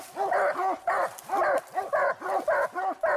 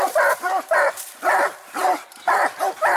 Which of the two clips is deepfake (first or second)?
second